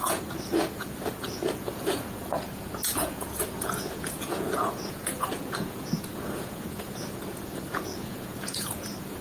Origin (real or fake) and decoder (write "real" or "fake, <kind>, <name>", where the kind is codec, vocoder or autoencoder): fake, vocoder, Vocos